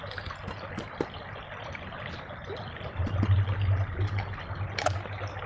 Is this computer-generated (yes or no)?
no